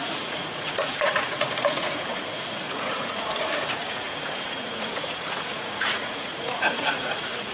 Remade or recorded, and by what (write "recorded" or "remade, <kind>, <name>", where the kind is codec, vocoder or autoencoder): remade, vocoder, Vocos